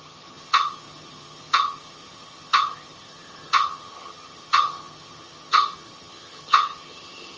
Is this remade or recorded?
remade